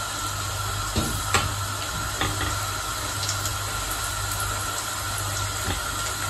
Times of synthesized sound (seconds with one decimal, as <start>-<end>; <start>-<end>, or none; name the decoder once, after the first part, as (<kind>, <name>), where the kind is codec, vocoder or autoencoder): none